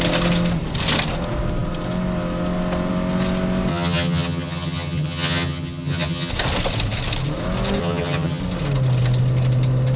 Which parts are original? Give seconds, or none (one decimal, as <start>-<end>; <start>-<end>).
0.0-3.7; 6.3-7.8; 8.4-10.0